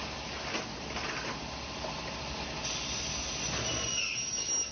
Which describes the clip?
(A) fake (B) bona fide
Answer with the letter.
B